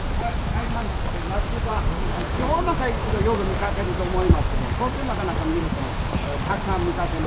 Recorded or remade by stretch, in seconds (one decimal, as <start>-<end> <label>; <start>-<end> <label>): 0.0-1.7 recorded; 1.7-4.0 remade; 4.0-5.5 recorded; 5.5-6.1 remade; 6.1-7.3 recorded